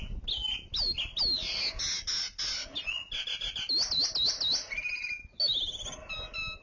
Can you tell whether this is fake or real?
real